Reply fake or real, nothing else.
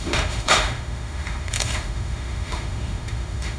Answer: fake